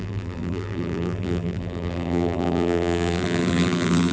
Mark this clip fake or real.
fake